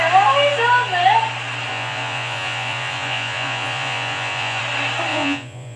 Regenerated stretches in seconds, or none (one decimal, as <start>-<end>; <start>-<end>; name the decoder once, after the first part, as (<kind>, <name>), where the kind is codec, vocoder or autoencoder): 1.7-4.6 (vocoder, Vocos); 5.1-5.8